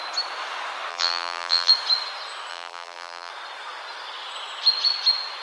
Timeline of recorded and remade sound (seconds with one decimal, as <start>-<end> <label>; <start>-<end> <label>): 0.0-0.9 recorded; 0.9-1.7 remade; 1.7-2.5 recorded; 2.5-3.3 remade; 3.3-5.4 recorded